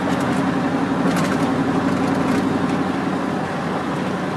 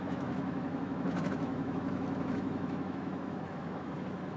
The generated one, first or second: second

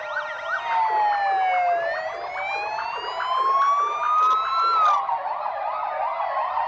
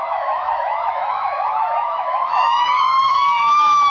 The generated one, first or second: second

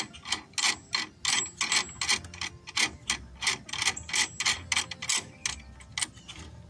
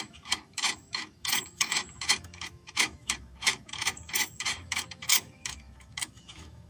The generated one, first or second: second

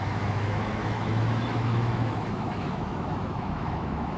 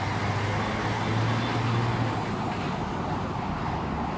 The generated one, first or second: first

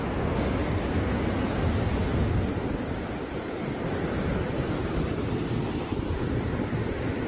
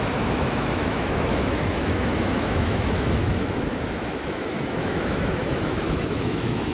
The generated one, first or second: second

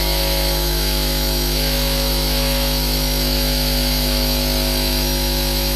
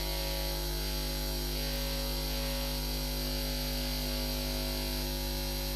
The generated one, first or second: first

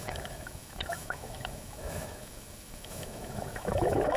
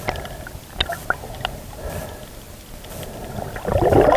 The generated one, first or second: first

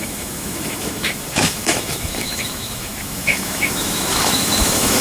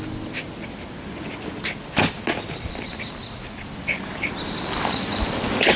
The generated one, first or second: first